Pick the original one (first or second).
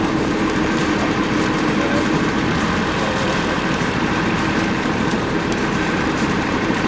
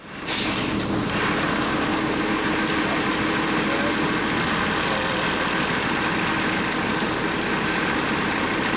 second